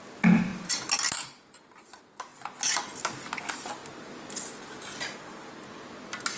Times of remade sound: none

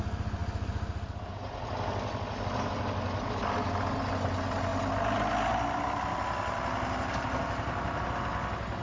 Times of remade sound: none

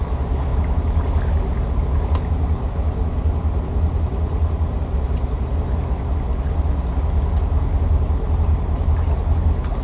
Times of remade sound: none

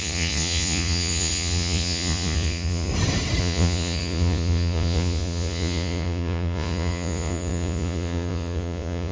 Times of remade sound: 0.0-2.9 (vocoder, Vocos); 3.4-9.1

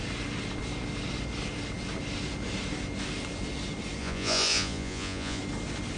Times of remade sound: 4.0-5.4 (vocoder, Vocos)